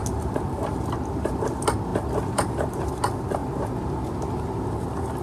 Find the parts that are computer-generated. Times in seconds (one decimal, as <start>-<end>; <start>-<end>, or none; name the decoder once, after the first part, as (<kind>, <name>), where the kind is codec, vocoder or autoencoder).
1.9-2.9 (vocoder, BigVGAN v2); 3.4-4.7

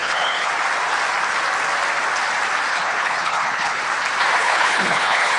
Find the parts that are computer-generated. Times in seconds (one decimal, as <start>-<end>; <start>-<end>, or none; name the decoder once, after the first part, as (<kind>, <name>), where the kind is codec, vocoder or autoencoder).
0.0-0.5 (codec, HILCodec); 2.7-3.8; 4.4-5.4